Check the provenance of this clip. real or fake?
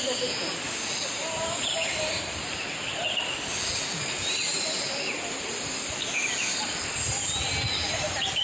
real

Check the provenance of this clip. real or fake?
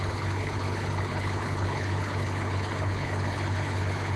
fake